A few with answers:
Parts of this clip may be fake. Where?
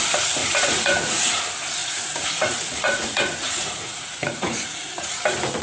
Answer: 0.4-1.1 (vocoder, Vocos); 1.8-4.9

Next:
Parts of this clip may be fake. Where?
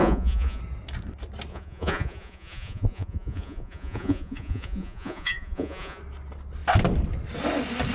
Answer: 0.0-0.6 (vocoder, Vocos); 1.5-6.0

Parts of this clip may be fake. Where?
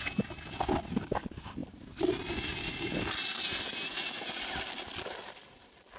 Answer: none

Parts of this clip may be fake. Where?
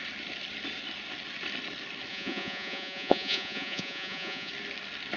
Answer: 2.1-4.5 (vocoder, Vocos)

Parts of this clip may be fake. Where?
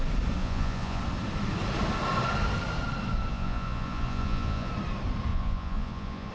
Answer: 0.4-1.0 (vocoder, Vocos); 3.3-4.7; 5.3-6.3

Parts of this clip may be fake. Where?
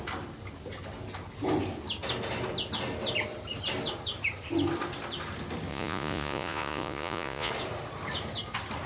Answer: 5.7-7.5 (vocoder, Vocos)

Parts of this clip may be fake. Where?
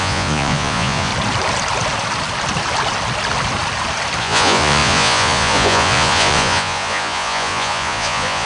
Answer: 0.0-1.1 (vocoder, Vocos); 4.2-8.5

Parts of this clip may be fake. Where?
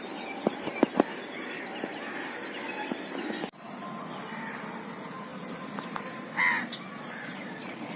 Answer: 6.9-8.0 (vocoder, Vocos)